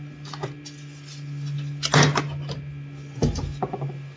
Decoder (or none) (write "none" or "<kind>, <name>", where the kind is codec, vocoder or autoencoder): none